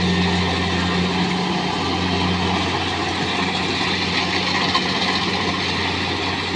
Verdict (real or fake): real